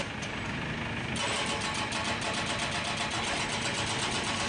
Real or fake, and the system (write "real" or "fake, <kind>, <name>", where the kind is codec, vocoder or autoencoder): real